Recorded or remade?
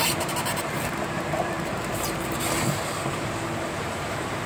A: remade